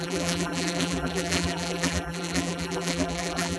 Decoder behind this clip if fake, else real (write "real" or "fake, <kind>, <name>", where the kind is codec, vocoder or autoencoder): fake, vocoder, BigVGAN v2